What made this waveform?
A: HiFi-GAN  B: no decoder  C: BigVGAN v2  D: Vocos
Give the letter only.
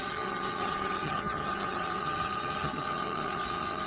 A